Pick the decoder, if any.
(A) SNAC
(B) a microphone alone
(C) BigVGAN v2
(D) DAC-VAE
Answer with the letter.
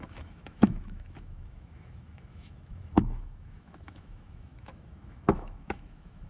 D